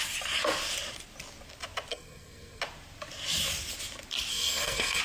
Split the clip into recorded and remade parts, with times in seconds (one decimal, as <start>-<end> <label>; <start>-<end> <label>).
0.0-1.9 recorded; 1.9-2.6 remade; 2.6-4.3 recorded; 4.3-5.0 remade

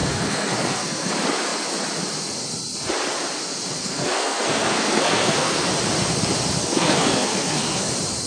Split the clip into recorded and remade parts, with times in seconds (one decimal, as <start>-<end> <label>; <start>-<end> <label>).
0.0-1.1 remade; 1.1-3.8 recorded; 3.8-5.7 remade; 5.7-6.6 recorded; 6.6-7.9 remade; 7.9-8.3 recorded

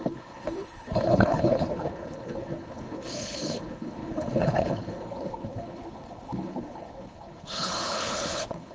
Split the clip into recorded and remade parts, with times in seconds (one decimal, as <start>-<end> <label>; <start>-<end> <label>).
0.0-8.7 remade